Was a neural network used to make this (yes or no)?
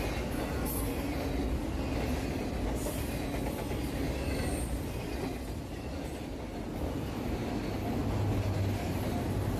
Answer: no